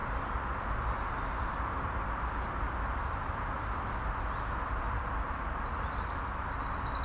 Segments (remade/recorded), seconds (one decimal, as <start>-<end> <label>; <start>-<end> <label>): 0.0-7.0 recorded